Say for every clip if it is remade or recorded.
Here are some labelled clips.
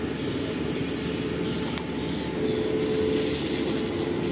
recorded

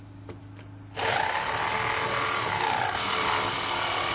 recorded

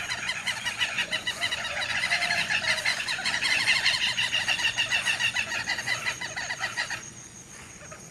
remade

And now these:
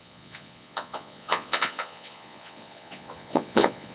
remade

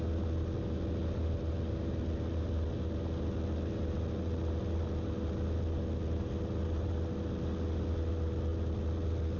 recorded